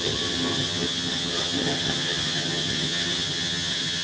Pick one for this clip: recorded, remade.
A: remade